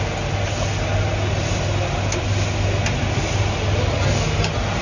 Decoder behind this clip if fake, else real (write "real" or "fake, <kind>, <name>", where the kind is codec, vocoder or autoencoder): real